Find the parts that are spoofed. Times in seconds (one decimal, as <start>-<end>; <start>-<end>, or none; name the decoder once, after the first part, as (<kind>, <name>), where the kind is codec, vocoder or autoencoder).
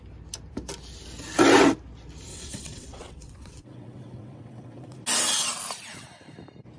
2.3-5.0 (vocoder, WaveNeXt)